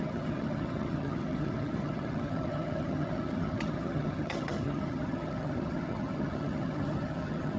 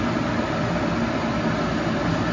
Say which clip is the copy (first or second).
first